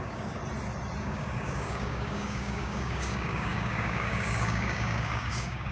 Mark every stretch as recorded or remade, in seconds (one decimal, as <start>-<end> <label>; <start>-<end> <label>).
0.0-0.4 remade; 0.4-1.0 recorded; 1.0-5.7 remade